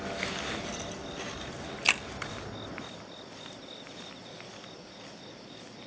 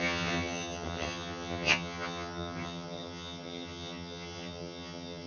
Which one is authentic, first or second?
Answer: first